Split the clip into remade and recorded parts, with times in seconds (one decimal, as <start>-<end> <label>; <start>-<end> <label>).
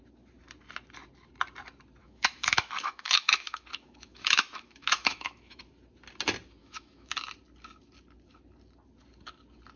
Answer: 0.0-2.0 recorded; 2.0-5.6 remade; 5.6-6.6 recorded; 6.6-7.1 remade; 7.1-9.8 recorded